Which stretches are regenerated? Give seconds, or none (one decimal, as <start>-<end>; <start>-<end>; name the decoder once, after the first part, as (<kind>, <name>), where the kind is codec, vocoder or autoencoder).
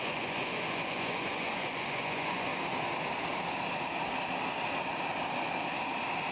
0.0-2.5 (vocoder, Vocos)